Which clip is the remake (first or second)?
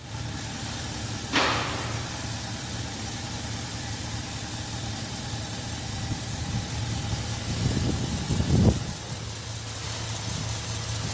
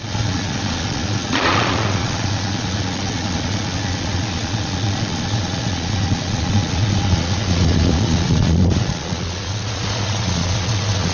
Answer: second